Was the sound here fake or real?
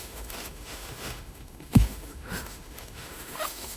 fake